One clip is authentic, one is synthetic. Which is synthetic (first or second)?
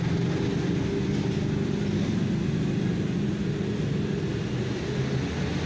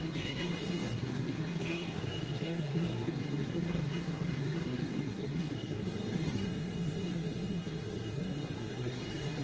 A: second